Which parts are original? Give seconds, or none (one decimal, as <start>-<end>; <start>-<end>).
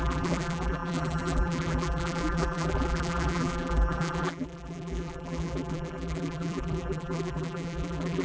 none